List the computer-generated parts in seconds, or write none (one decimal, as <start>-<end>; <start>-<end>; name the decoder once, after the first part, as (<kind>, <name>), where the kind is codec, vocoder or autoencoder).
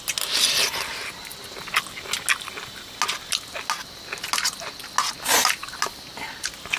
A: none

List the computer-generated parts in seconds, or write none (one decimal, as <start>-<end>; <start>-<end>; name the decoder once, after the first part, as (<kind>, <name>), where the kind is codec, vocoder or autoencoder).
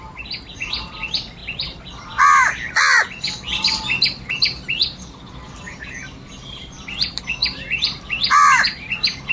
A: 7.4-9.3 (vocoder, BigVGAN v2)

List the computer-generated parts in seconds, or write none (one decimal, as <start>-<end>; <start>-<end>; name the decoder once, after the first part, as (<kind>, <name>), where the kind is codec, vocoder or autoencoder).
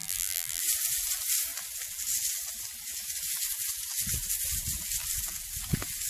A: 0.0-0.6 (vocoder, BigVGAN v2)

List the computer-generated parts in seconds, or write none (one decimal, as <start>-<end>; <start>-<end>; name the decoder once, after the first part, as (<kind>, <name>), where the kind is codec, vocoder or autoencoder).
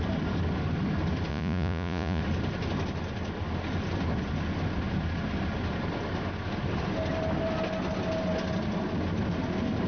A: 1.3-2.2 (vocoder, Vocos)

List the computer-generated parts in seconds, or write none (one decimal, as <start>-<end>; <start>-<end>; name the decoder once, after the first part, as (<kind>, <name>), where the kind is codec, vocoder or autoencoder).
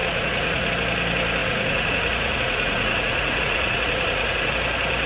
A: 0.0-0.7 (vocoder, Vocos); 1.4-4.5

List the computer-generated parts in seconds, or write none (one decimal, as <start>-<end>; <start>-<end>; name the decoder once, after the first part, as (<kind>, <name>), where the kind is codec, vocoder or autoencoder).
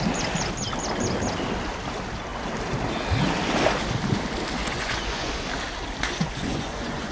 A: 4.6-5.3 (vocoder, Vocos); 6.1-7.1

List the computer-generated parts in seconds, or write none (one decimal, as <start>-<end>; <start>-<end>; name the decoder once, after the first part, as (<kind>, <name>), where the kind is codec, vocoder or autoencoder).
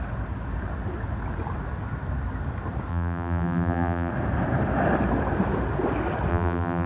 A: 2.9-4.1 (vocoder, BigVGAN v2); 6.3-6.9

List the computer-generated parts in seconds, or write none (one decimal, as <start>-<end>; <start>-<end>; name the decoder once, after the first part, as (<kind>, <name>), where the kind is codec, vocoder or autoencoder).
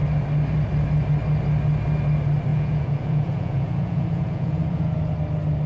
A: 2.5-5.0 (vocoder, Vocos)